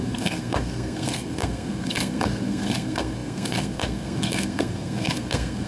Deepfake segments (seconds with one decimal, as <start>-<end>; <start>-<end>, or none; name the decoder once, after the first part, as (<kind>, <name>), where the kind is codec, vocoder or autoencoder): 0.0-5.7 (codec, SNAC)